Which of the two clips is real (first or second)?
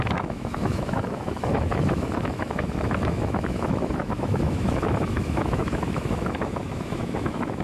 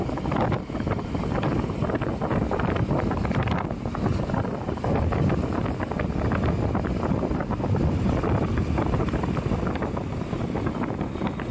second